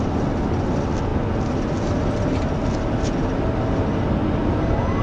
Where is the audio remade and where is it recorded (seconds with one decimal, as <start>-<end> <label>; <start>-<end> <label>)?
0.0-5.0 recorded